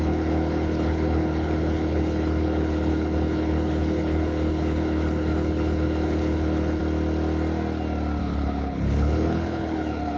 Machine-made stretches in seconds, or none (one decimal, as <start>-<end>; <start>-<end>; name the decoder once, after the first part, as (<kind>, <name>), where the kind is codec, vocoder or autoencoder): 0.0-6.8 (codec, HILCodec); 8.2-10.2